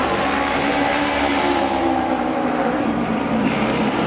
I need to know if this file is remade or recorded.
remade